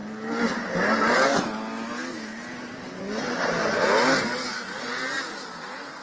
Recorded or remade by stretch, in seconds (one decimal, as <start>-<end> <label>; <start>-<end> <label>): 0.0-6.0 recorded